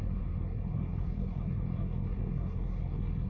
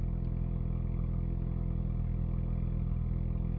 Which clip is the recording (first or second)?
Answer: second